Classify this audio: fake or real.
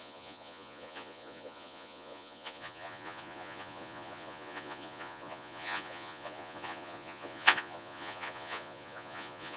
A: fake